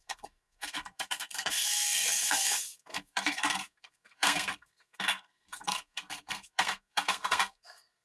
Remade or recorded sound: remade